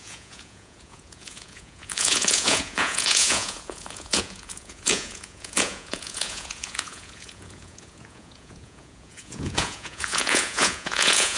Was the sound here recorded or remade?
remade